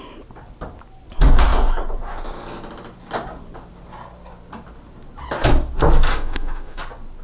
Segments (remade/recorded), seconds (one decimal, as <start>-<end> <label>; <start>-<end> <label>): 0.0-6.1 recorded; 6.1-6.8 remade; 6.8-7.2 recorded